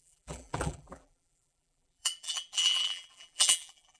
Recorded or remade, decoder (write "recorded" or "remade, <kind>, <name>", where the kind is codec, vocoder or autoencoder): remade, vocoder, BigVGAN v2